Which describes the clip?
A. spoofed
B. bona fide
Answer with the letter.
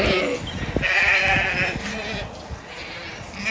B